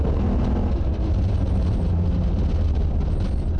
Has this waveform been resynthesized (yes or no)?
no